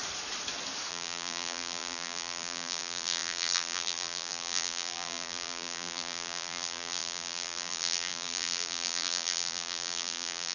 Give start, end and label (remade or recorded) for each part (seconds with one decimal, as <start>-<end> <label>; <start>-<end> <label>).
0.0-0.9 recorded; 0.9-10.5 remade

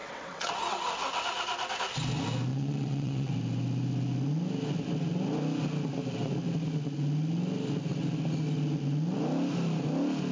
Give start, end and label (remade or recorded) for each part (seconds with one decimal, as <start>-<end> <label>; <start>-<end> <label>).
0.0-0.5 remade; 0.5-2.5 recorded; 2.5-3.3 remade; 3.3-10.3 recorded

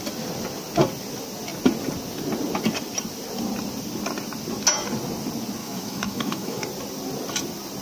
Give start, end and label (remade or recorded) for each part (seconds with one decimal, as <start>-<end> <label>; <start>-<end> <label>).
0.0-5.6 recorded; 5.6-6.6 remade; 6.6-7.8 recorded

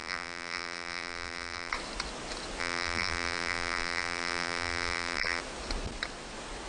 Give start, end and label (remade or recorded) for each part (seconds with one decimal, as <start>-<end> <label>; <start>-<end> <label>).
0.0-1.7 remade; 1.7-2.6 recorded; 2.6-5.4 remade; 5.4-6.7 recorded

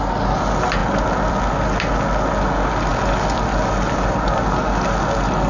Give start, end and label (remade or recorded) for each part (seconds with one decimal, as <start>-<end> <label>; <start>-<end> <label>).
0.0-0.8 recorded; 0.8-1.4 remade; 1.4-2.9 recorded; 2.9-4.4 remade; 4.4-5.5 recorded

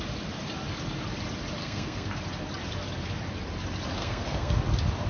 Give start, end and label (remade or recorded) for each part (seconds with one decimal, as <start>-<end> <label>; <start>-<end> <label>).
0.0-1.6 recorded; 1.6-2.2 remade; 2.2-4.0 recorded; 4.0-4.6 remade; 4.6-5.1 recorded